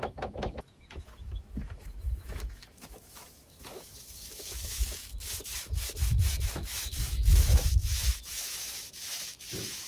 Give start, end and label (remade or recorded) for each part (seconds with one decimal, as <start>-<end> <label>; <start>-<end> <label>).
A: 0.0-9.9 remade